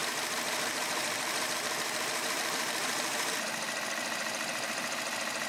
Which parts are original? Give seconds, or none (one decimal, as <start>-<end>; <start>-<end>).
3.3-5.5